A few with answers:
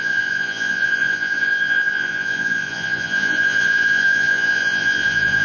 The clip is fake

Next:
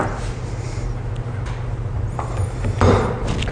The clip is real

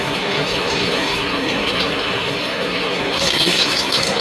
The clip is fake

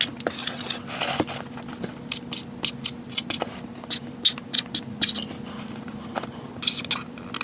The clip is real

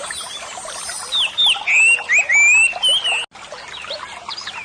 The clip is real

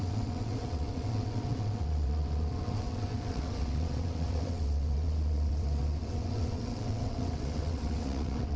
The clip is fake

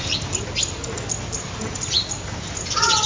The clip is real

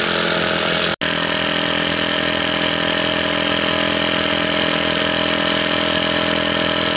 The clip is real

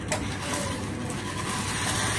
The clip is real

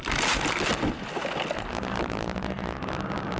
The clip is real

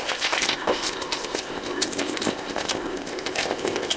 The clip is fake